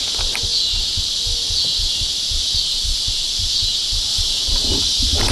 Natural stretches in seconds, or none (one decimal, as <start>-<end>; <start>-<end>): 0.0-2.6; 3.3-4.1